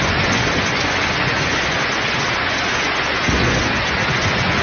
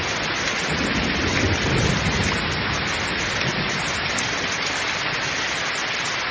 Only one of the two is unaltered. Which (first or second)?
second